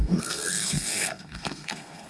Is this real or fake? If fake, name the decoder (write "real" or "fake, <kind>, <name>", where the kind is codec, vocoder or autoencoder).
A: fake, codec, SNAC